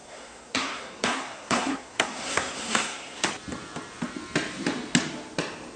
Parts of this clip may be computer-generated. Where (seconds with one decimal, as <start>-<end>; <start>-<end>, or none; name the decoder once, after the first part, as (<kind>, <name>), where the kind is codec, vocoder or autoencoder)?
0.0-3.3 (codec, SNAC)